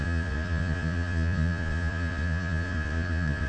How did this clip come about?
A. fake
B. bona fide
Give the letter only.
A